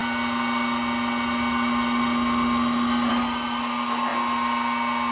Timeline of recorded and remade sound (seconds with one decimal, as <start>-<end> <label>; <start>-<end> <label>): 0.0-5.1 recorded